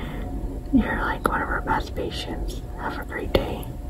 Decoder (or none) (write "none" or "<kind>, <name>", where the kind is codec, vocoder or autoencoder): none